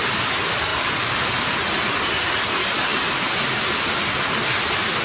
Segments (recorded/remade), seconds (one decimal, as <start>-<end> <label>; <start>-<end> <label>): 0.0-5.0 recorded